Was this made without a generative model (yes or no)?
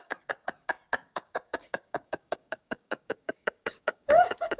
no